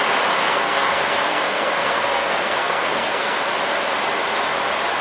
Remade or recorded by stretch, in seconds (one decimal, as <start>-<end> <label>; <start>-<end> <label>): 0.0-0.4 recorded; 0.4-3.4 remade; 3.4-5.0 recorded